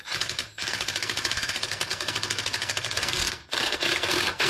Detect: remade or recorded remade